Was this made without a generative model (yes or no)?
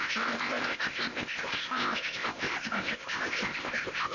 no